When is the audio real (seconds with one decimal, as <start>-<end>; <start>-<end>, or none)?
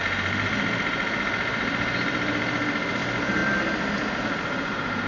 3.4-4.2